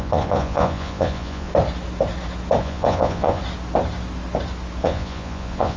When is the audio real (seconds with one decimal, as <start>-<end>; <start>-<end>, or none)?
1.5-2.6; 3.4-4.8